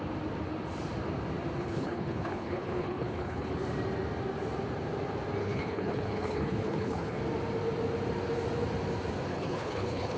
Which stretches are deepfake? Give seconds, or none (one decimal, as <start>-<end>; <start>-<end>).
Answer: 1.6-3.5; 5.4-7.2; 9.3-10.2